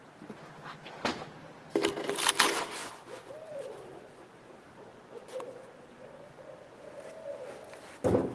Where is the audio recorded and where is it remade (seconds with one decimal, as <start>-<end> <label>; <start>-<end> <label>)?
0.0-2.8 recorded; 2.8-3.3 remade; 3.3-3.9 recorded; 3.9-4.5 remade; 4.5-4.9 recorded; 4.9-6.8 remade; 6.8-8.3 recorded